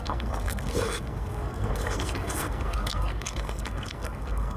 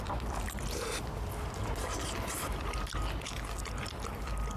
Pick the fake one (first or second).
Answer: first